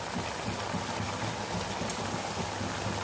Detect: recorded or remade recorded